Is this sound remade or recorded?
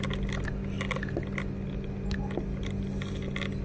recorded